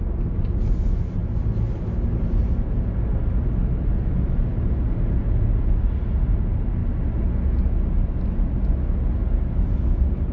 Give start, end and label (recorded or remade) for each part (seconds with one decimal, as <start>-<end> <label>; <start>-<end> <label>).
0.0-10.3 recorded

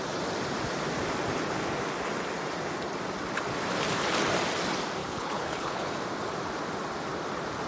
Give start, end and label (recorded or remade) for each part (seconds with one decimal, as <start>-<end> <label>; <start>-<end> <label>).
0.0-5.0 recorded; 5.0-5.9 remade; 5.9-7.7 recorded

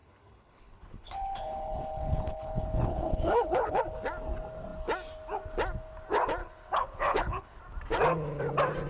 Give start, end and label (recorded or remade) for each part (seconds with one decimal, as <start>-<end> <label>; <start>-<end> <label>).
0.0-3.8 remade; 3.8-6.4 recorded; 6.4-7.6 remade; 7.6-8.9 recorded

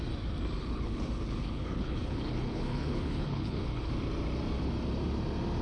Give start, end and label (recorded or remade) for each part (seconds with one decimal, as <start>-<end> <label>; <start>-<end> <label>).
0.0-0.6 recorded; 0.6-3.9 remade; 3.9-5.6 recorded

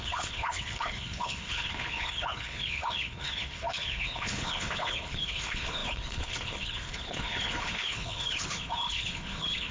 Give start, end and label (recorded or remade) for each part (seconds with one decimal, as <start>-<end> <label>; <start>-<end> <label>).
0.0-9.7 remade

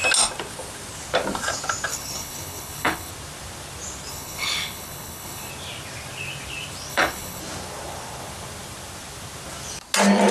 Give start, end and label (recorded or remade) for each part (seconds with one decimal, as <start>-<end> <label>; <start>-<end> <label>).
0.0-1.9 recorded; 1.9-3.1 remade; 3.1-4.1 recorded; 4.1-5.5 remade; 5.5-6.9 recorded; 6.9-7.4 remade; 7.4-10.3 recorded

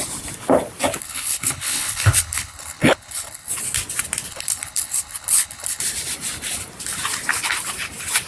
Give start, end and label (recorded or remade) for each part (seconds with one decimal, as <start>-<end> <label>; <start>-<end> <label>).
0.0-1.0 recorded; 1.0-3.5 remade; 3.5-4.3 recorded; 4.3-5.8 remade; 5.8-8.3 recorded